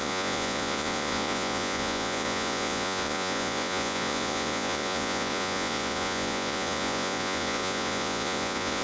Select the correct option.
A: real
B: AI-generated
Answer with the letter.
B